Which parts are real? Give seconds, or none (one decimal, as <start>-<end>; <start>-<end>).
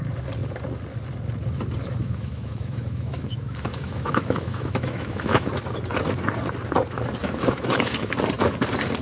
0.0-2.0; 5.5-7.2; 8.1-9.0